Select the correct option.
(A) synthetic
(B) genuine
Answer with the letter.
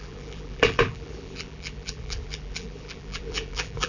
A